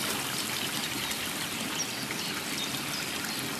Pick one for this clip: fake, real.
real